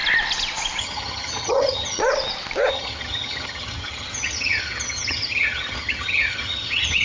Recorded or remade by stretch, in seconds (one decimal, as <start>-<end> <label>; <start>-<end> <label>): 0.0-0.8 recorded; 0.8-2.0 remade; 2.0-2.7 recorded; 2.7-7.0 remade